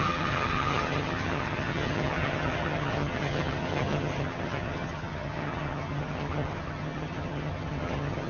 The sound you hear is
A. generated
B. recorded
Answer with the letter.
A